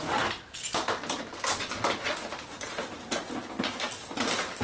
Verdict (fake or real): real